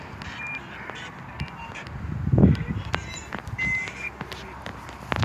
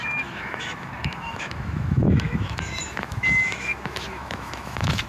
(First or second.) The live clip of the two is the first